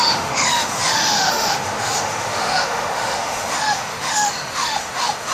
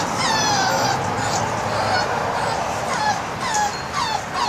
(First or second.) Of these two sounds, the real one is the second